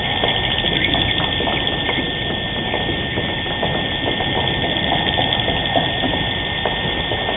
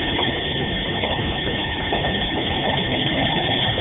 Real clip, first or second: first